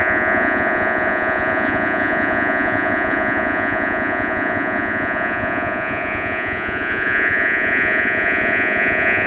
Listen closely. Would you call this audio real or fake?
fake